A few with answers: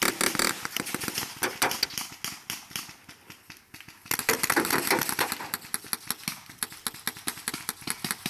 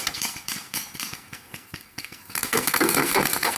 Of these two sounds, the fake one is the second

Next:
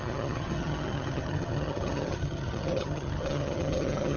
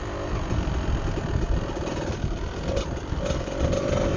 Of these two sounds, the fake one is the first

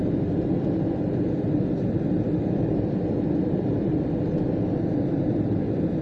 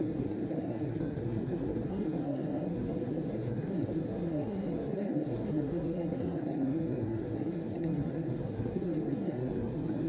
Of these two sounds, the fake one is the second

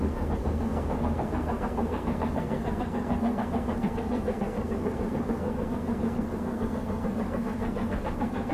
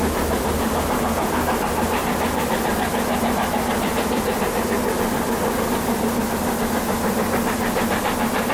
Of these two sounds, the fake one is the first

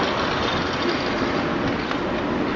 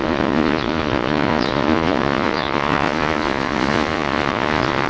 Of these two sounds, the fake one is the second